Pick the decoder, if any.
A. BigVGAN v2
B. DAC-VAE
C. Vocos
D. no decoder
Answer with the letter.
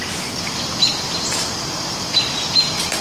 D